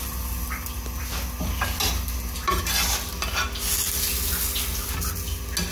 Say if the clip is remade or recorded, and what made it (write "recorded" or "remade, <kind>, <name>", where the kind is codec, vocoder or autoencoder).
recorded